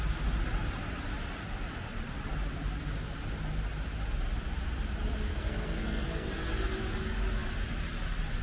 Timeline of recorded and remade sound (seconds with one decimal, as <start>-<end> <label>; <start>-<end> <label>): 0.0-5.3 recorded; 5.3-6.3 remade; 6.3-8.4 recorded

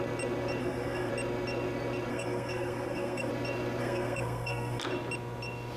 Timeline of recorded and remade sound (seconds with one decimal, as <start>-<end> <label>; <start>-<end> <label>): 0.0-0.6 recorded; 0.6-1.1 remade; 1.1-2.1 recorded; 2.1-3.3 remade; 3.3-3.8 recorded; 3.8-4.8 remade; 4.8-5.8 recorded

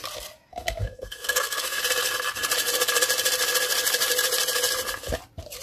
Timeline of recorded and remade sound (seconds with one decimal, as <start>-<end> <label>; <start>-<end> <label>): 0.0-0.5 recorded; 0.5-1.8 remade; 1.8-5.6 recorded